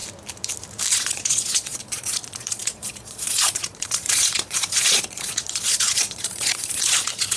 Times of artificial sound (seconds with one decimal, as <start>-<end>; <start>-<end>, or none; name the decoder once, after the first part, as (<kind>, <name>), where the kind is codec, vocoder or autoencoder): 0.9-7.4 (vocoder, Vocos)

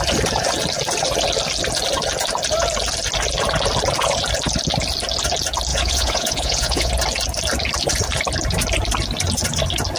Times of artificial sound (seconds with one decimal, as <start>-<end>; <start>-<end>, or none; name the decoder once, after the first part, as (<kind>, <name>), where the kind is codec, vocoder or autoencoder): 5.7-6.9 (vocoder, Vocos)

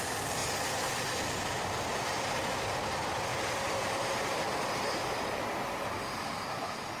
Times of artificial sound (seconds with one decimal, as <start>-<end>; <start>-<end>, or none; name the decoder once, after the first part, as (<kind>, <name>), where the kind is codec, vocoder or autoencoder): 1.9-2.8 (vocoder, BigVGAN v2); 3.3-4.4

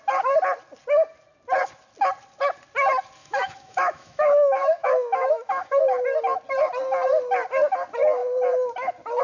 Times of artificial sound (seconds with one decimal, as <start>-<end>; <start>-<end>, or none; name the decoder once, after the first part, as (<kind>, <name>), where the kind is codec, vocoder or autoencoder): 3.2-5.8 (autoencoder, DAC-VAE)

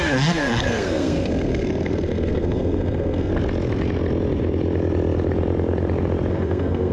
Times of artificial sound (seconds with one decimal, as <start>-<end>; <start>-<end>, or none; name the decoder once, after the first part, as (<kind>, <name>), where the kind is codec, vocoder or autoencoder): 0.0-3.3 (codec, SNAC); 6.3-6.9

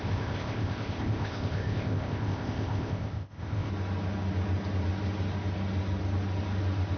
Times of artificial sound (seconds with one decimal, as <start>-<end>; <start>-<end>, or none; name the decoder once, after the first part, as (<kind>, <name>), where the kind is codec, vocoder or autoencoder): 0.0-3.7 (codec, ZipCodec)

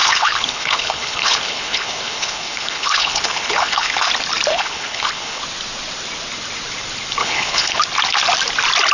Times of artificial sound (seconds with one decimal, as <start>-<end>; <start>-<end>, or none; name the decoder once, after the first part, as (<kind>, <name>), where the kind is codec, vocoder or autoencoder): 0.0-4.1 (codec, HILCodec); 4.5-5.4; 7.2-7.8